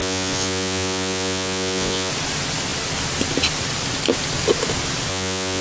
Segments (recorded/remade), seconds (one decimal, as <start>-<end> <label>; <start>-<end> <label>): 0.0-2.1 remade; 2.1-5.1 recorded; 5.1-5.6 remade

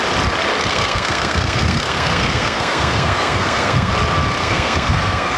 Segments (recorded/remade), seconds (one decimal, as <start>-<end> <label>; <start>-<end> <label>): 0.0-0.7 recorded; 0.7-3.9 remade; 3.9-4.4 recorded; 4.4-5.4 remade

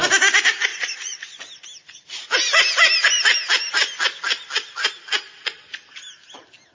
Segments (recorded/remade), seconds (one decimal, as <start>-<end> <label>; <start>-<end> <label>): 0.0-0.7 recorded; 0.7-1.4 remade; 1.4-6.7 recorded

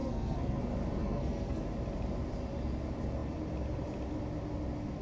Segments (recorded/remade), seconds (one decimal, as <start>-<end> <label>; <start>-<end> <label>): 0.0-0.6 remade; 0.6-1.0 recorded; 1.0-1.6 remade; 1.6-5.0 recorded

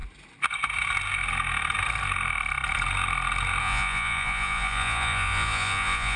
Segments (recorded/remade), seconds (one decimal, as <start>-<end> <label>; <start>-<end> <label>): 0.0-3.6 recorded; 3.6-6.2 remade

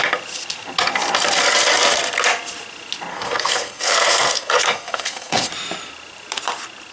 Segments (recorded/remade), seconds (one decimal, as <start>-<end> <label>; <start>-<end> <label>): 0.0-3.1 recorded; 3.1-5.5 remade; 5.5-6.9 recorded